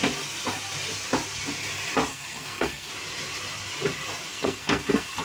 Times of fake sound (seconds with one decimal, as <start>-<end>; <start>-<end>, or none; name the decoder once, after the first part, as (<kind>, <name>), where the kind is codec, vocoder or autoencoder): 2.1-2.9 (codec, SNAC); 4.3-5.2